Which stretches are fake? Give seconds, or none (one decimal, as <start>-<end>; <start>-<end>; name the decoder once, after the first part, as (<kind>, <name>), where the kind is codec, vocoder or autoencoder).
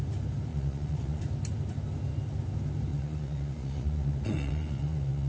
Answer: 0.5-1.2 (vocoder, Vocos); 2.9-5.3